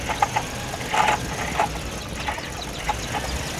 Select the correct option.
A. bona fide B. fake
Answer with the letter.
A